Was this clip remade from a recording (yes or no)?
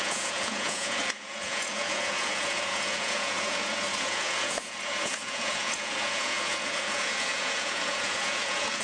yes